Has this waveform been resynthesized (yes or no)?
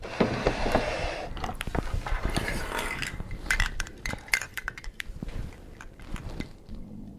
yes